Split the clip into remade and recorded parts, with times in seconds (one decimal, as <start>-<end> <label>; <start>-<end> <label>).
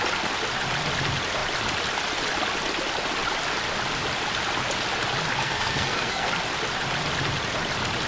0.0-5.4 recorded; 5.4-6.3 remade; 6.3-8.1 recorded